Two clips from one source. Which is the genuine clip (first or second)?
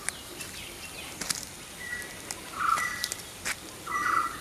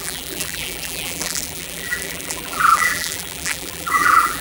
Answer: first